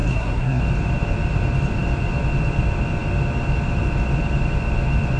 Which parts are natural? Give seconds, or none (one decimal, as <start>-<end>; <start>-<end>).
0.6-5.2